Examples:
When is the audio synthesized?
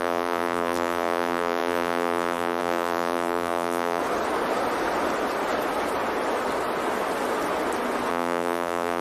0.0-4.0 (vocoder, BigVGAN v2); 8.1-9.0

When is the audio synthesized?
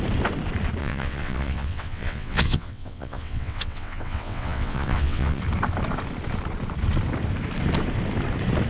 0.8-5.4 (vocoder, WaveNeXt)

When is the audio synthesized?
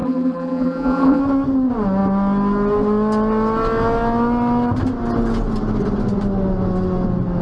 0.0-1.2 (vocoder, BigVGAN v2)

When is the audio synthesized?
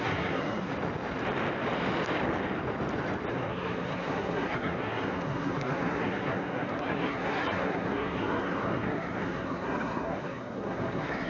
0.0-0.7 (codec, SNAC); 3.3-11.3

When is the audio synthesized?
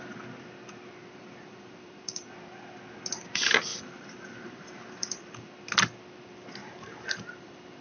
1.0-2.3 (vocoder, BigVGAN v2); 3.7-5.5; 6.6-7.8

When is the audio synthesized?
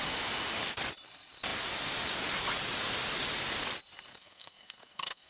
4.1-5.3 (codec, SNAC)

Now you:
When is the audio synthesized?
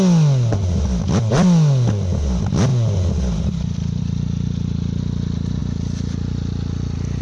none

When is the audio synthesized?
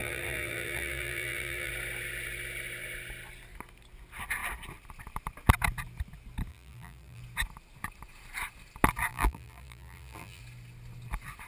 0.0-1.7 (vocoder, BigVGAN v2); 6.5-7.2; 9.1-10.4